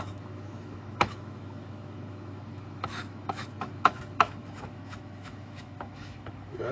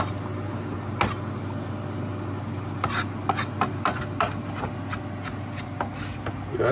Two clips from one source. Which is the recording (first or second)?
second